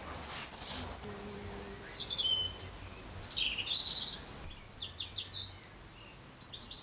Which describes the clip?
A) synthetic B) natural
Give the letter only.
B